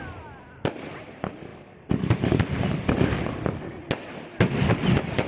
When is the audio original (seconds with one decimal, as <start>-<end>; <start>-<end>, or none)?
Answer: 1.5-4.7